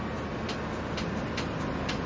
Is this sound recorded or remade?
recorded